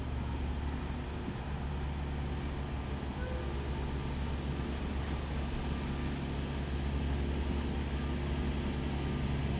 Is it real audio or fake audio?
real